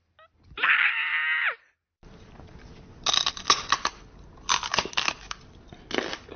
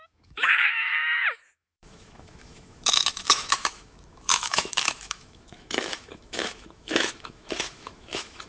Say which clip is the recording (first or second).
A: first